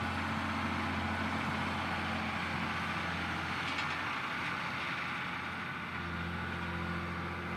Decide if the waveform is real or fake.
real